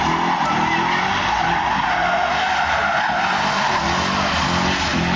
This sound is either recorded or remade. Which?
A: recorded